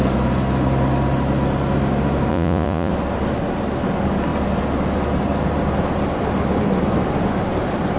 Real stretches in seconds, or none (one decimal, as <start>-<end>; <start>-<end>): 0.0-2.3; 2.9-8.0